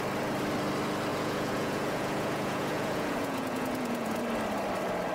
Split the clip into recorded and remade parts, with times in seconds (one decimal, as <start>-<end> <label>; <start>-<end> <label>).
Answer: 0.0-1.1 recorded; 1.1-4.2 remade; 4.2-5.1 recorded